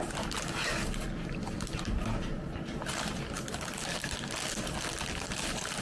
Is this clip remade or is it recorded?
recorded